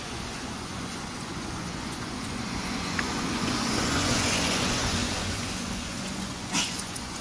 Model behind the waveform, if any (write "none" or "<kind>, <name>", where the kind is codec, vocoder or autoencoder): vocoder, Vocos